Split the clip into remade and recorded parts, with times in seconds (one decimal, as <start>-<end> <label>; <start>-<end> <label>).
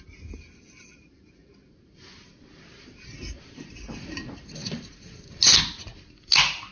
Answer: 0.0-6.7 recorded